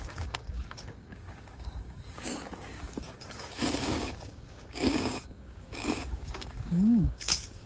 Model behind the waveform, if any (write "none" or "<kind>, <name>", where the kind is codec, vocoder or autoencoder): codec, DAC